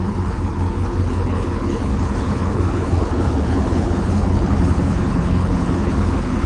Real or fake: fake